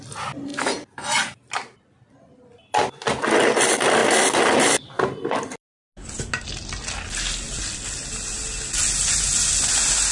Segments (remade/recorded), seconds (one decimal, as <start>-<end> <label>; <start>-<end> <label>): 0.0-10.1 recorded